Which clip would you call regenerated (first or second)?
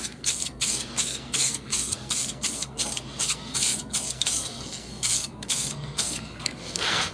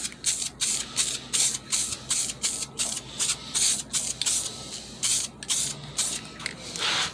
first